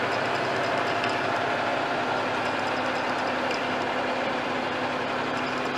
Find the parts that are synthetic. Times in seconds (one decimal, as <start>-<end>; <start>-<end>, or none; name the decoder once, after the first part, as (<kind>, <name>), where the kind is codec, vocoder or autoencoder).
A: none